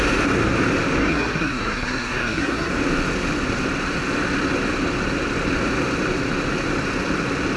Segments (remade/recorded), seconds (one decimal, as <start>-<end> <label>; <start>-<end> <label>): 0.0-1.0 recorded; 1.0-2.7 remade; 2.7-7.6 recorded